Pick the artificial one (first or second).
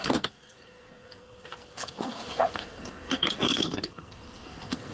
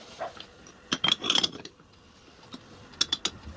first